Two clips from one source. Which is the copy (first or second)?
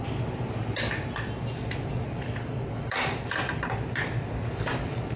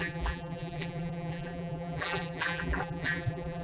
second